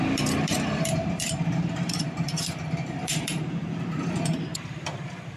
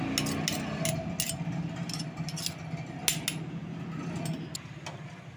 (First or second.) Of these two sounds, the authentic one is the second